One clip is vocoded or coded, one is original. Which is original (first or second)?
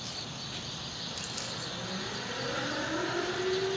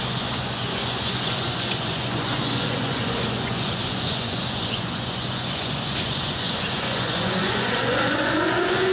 first